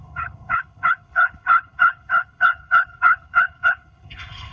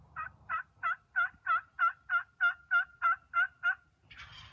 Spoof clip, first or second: first